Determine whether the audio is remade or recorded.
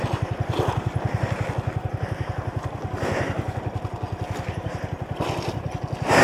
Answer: recorded